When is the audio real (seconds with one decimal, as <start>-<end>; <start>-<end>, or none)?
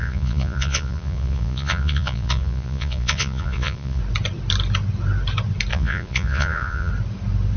4.0-5.7; 6.9-7.6